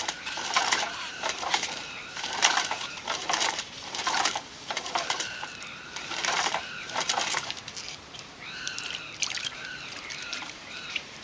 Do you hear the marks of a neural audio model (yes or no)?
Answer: yes